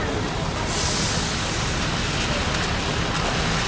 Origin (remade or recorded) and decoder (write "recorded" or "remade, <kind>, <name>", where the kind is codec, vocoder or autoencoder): recorded